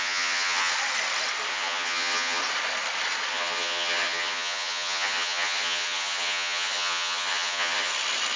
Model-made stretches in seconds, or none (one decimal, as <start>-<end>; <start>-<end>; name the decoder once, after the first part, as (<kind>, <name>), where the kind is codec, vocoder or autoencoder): 0.0-0.7 (vocoder, HiFi-GAN); 1.5-2.4; 3.3-7.9